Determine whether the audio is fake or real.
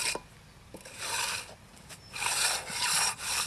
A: real